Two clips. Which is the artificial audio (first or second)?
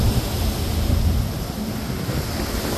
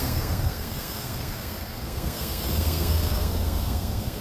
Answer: second